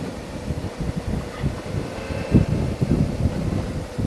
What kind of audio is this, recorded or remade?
recorded